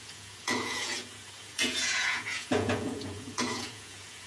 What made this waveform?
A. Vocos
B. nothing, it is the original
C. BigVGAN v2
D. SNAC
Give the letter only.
A